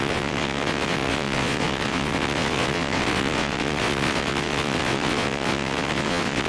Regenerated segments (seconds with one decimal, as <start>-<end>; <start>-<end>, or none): 0.0-6.5